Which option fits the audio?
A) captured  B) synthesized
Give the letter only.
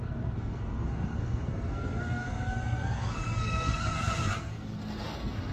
B